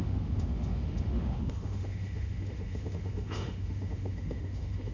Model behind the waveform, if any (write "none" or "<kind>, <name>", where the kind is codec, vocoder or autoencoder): autoencoder, DAC-VAE